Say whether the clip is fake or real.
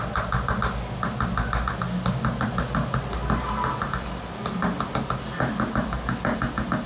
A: real